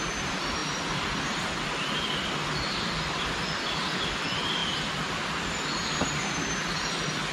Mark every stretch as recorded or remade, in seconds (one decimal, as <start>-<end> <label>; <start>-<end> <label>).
0.0-7.3 recorded